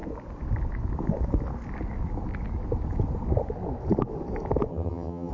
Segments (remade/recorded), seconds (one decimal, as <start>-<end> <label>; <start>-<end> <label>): 0.0-4.7 recorded; 4.7-5.3 remade